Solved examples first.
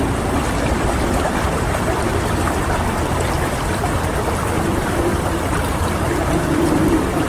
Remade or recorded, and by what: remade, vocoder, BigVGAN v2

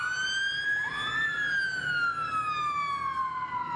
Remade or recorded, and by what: recorded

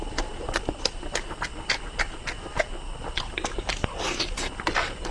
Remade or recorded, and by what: recorded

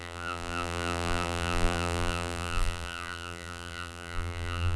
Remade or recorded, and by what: remade, vocoder, BigVGAN v2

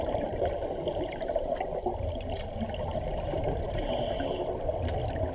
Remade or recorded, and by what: recorded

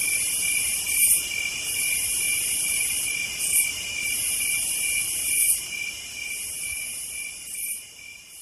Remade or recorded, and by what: remade, vocoder, BigVGAN v2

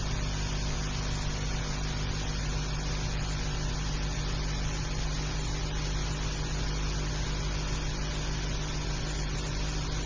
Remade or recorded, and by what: recorded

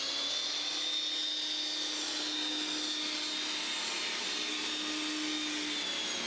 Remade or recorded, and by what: recorded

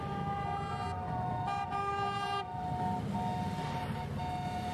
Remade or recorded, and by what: recorded